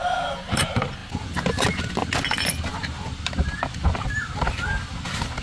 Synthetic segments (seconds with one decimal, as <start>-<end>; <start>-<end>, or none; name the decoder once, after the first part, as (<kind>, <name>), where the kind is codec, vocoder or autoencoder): none